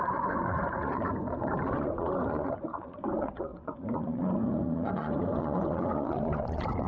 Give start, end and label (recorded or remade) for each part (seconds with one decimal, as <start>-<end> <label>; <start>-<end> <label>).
0.0-6.9 remade

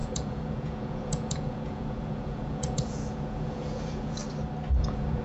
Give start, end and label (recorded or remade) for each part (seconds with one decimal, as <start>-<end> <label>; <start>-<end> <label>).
0.0-4.2 remade; 4.2-4.8 recorded; 4.8-5.2 remade

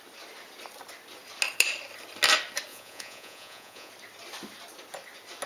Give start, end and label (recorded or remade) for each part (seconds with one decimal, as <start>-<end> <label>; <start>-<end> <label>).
0.0-2.7 recorded; 2.7-3.9 remade; 3.9-5.5 recorded

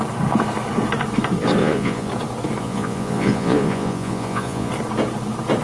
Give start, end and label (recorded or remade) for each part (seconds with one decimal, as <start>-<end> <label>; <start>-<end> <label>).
0.0-1.6 recorded; 1.6-2.1 remade; 2.1-2.6 recorded; 2.6-4.7 remade; 4.7-5.6 recorded